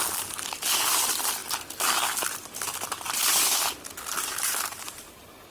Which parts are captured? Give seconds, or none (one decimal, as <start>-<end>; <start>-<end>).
0.0-5.5